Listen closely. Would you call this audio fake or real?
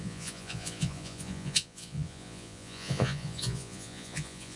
fake